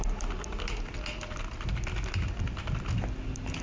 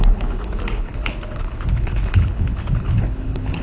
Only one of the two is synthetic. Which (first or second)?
second